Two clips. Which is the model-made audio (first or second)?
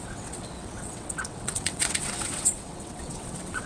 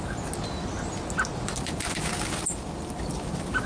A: first